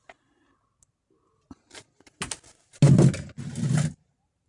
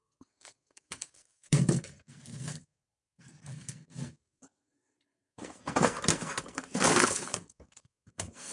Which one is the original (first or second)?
first